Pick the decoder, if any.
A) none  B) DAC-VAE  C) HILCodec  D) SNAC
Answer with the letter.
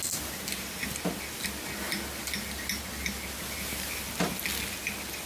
A